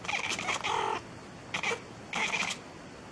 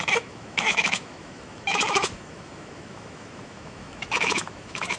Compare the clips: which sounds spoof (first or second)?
second